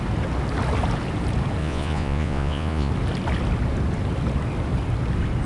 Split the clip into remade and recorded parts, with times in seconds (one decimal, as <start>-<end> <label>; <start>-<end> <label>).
0.0-1.6 recorded; 1.6-2.9 remade; 2.9-5.5 recorded